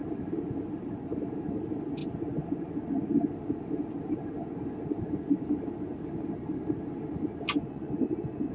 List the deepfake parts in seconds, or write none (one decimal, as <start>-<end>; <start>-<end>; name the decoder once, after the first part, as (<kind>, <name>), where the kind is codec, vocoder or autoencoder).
7.6-8.5 (vocoder, Vocos)